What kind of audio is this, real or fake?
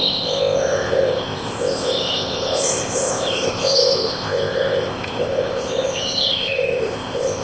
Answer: fake